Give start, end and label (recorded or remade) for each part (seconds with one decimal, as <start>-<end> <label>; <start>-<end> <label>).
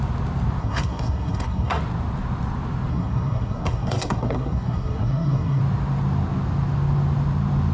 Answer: 0.0-0.6 recorded; 0.6-1.8 remade; 1.8-2.9 recorded; 2.9-5.6 remade; 5.6-7.7 recorded